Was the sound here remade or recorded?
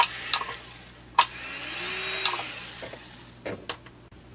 recorded